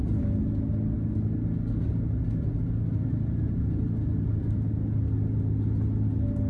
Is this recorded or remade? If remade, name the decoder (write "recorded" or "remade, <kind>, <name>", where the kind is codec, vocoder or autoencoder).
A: recorded